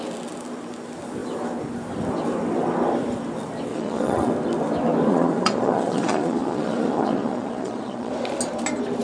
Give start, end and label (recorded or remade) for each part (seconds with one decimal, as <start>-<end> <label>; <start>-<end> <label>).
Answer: 0.0-3.7 recorded; 3.7-4.3 remade; 4.3-5.1 recorded; 5.1-8.1 remade; 8.1-9.0 recorded